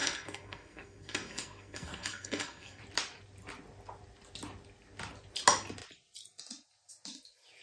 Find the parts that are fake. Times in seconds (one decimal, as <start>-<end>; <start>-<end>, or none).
0.0-2.8